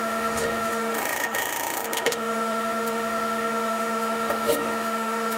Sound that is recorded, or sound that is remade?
remade